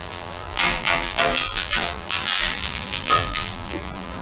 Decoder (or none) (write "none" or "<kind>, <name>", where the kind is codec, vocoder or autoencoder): vocoder, BigVGAN v2